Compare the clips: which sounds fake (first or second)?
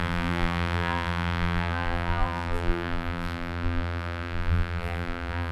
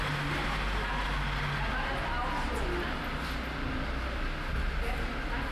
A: first